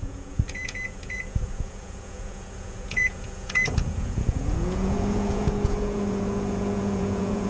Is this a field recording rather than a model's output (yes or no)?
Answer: no